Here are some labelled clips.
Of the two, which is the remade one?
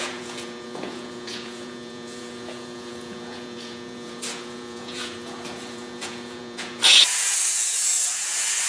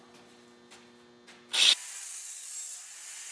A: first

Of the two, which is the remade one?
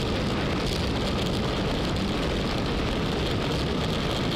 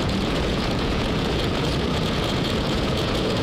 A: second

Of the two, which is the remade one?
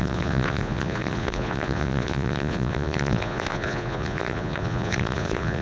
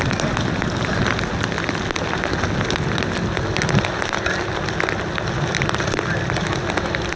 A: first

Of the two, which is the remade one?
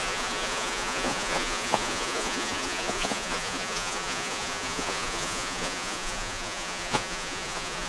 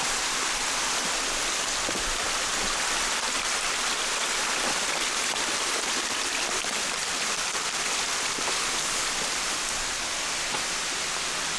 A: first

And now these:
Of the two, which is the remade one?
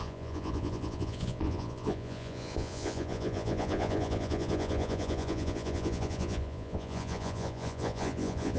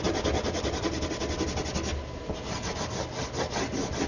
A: first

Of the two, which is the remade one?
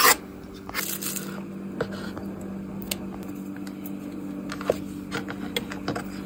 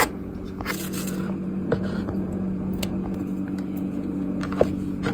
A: second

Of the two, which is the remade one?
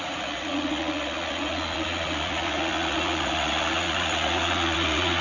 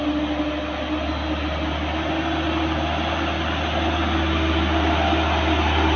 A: first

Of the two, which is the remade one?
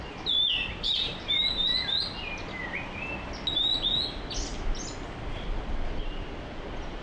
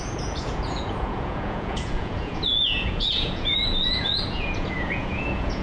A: second